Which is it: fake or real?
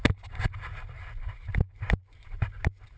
real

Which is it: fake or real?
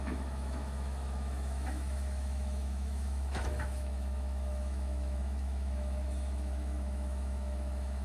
fake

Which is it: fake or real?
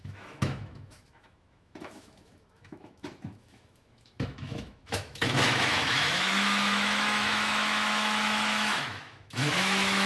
fake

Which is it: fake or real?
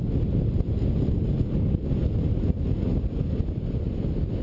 real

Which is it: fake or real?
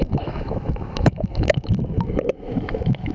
fake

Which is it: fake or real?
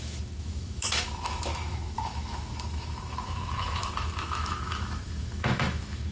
fake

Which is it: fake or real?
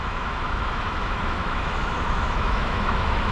fake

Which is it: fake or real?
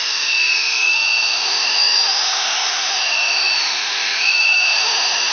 fake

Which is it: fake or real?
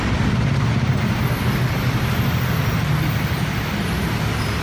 real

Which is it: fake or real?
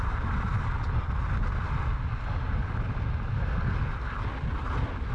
real